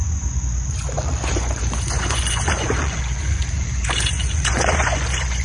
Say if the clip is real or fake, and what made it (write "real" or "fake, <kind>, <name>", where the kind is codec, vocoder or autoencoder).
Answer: fake, vocoder, Vocos